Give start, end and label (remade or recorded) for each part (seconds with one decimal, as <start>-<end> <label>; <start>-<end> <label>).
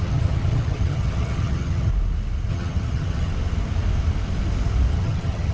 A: 0.0-1.9 remade; 1.9-2.5 recorded; 2.5-3.3 remade; 3.3-4.9 recorded; 4.9-5.5 remade